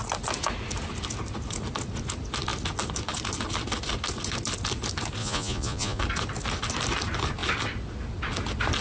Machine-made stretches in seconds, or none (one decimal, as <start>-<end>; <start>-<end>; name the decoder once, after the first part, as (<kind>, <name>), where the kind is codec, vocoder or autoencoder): 5.2-6.0 (vocoder, Vocos)